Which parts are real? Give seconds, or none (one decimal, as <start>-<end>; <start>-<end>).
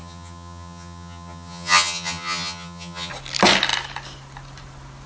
3.1-5.1